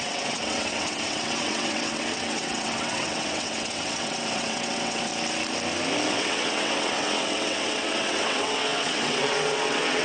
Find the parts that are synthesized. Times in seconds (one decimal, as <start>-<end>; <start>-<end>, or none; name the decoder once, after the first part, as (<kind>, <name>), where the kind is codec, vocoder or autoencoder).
0.0-5.1 (vocoder, WaveNeXt); 6.1-10.0